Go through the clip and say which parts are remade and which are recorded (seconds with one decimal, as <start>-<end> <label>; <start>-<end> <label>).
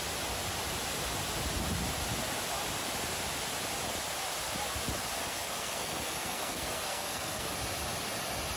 0.0-5.2 recorded; 5.2-7.5 remade; 7.5-8.6 recorded